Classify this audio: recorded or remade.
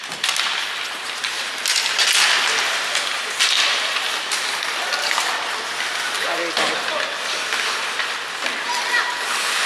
recorded